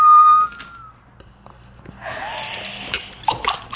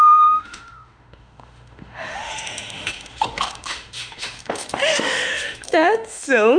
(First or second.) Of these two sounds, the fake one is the second